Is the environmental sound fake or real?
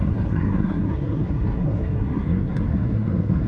fake